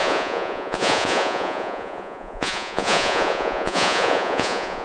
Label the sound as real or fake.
fake